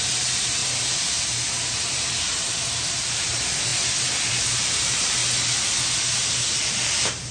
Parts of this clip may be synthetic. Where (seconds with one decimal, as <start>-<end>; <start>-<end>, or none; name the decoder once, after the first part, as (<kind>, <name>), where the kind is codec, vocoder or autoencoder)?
0.0-3.7 (vocoder, BigVGAN v2); 4.3-5.2; 6.3-7.3